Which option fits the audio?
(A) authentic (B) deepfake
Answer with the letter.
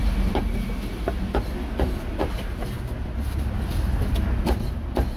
A